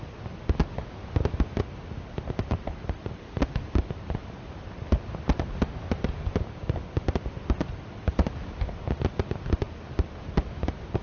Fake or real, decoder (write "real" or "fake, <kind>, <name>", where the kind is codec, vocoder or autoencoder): real